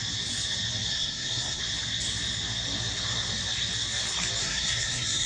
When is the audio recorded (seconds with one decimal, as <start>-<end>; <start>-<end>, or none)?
0.0-0.9; 1.6-4.4